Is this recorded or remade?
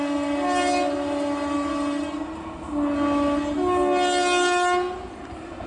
recorded